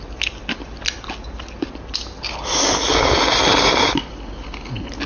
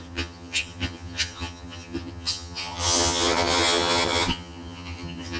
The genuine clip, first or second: first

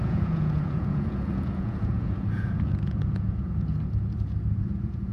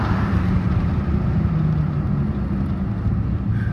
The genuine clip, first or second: second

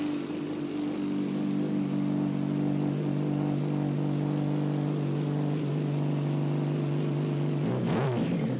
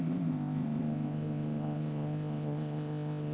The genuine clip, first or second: first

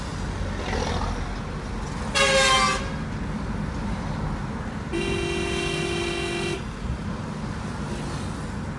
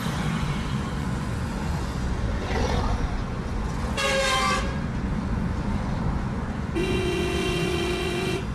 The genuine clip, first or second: first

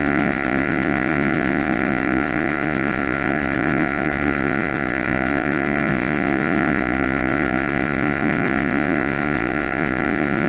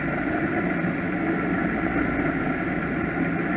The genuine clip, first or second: second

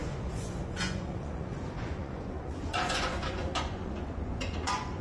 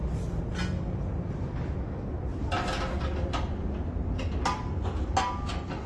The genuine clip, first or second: second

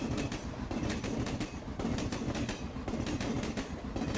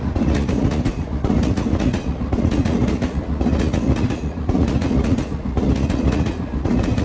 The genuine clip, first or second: first